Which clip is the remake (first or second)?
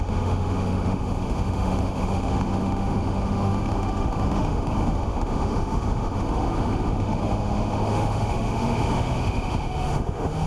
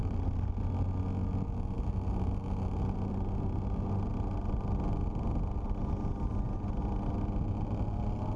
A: first